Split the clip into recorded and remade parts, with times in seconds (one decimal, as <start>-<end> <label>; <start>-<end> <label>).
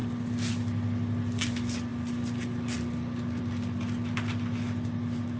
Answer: 0.0-5.4 recorded